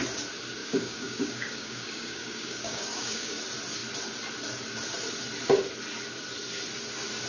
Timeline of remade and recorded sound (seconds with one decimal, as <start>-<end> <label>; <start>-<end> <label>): 0.0-0.6 recorded; 0.6-3.4 remade; 3.4-7.3 recorded